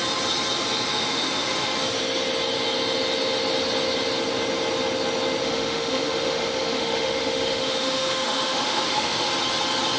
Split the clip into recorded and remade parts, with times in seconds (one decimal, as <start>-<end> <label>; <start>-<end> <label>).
0.0-0.9 recorded; 0.9-1.7 remade; 1.7-5.4 recorded; 5.4-9.3 remade; 9.3-10.0 recorded